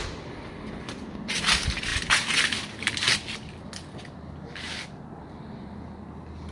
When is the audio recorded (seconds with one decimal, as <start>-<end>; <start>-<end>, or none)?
0.0-6.5